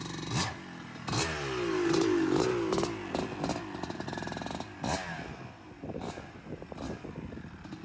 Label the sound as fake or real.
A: real